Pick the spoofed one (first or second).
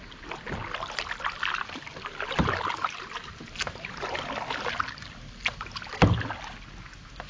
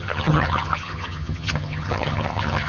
second